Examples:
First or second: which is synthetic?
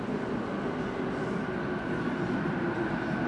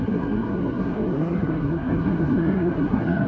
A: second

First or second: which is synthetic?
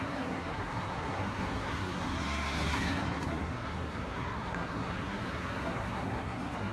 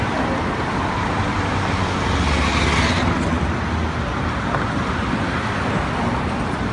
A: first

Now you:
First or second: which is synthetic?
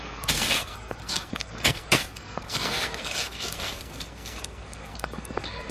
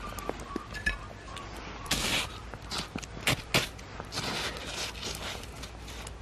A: first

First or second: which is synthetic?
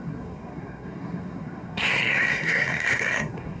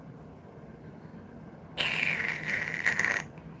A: first